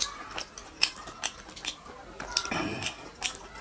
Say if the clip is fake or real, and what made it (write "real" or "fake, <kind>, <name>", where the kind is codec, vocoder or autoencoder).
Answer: real